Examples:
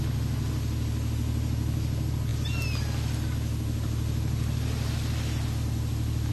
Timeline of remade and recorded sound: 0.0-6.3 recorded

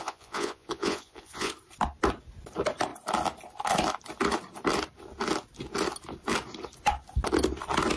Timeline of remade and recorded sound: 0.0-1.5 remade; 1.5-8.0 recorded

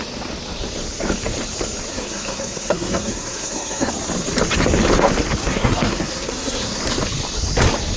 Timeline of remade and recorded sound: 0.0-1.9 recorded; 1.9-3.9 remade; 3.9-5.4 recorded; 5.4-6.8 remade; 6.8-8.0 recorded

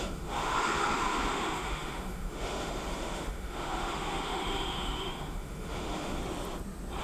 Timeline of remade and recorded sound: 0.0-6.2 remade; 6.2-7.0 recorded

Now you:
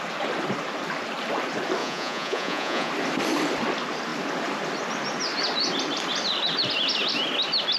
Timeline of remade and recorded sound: 0.0-1.8 recorded; 1.8-2.9 remade; 2.9-7.8 recorded

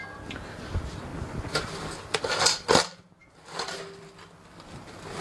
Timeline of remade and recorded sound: 0.0-5.2 recorded

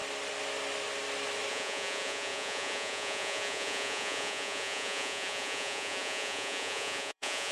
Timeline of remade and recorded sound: 0.0-1.5 recorded; 1.5-7.5 remade